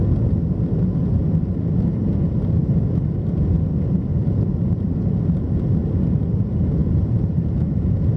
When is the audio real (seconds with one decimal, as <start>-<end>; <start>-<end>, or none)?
0.0-4.1; 4.9-6.8; 7.5-8.2